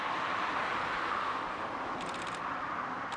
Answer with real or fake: fake